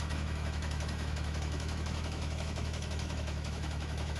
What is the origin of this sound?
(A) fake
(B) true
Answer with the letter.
A